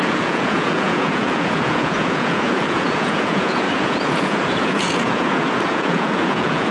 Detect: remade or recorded remade